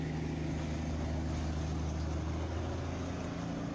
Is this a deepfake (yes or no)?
no